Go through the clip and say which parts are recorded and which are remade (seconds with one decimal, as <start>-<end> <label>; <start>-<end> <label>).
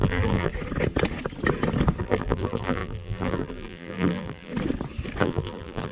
0.0-0.5 remade; 0.5-2.0 recorded; 2.0-4.5 remade; 4.5-5.2 recorded; 5.2-5.9 remade